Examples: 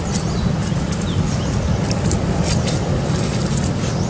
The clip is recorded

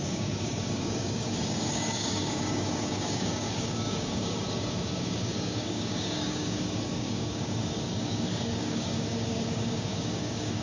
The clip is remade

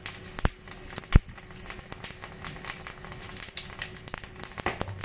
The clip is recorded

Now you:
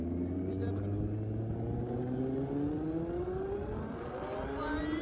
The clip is recorded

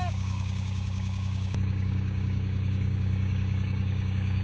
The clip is remade